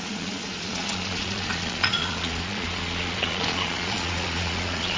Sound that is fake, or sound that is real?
fake